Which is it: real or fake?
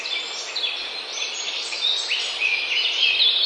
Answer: real